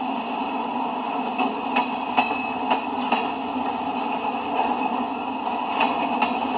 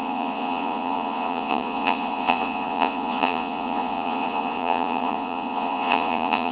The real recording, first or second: first